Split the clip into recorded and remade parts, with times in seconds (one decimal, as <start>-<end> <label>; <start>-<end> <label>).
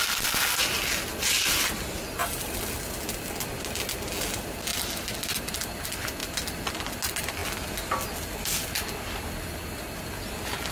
0.0-4.7 recorded; 4.7-5.7 remade; 5.7-10.7 recorded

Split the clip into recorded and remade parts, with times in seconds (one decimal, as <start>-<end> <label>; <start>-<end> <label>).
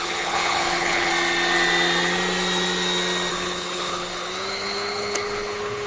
0.0-1.1 remade; 1.1-3.3 recorded; 3.3-5.9 remade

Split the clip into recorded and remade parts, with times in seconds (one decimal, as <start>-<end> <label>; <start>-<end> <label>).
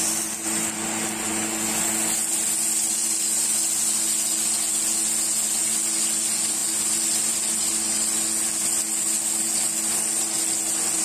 0.0-11.0 recorded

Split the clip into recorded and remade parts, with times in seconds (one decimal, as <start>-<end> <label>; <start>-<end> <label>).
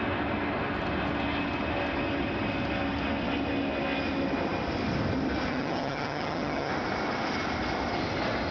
0.0-5.5 recorded; 5.5-6.7 remade; 6.7-8.5 recorded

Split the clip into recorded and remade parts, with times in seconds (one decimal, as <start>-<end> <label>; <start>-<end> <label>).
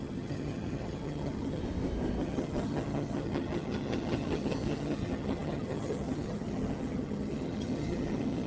0.0-1.6 remade; 1.6-2.2 recorded; 2.2-8.5 remade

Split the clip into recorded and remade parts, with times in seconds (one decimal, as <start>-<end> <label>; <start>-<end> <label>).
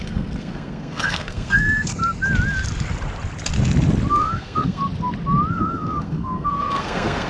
0.0-2.0 remade; 2.0-4.1 recorded; 4.1-4.8 remade; 4.8-5.5 recorded; 5.5-7.3 remade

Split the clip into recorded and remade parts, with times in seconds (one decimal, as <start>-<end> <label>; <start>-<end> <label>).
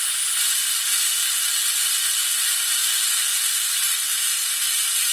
0.0-5.1 recorded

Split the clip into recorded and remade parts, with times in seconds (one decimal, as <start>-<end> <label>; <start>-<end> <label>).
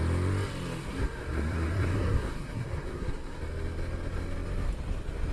0.0-0.8 recorded; 0.8-3.4 remade; 3.4-5.3 recorded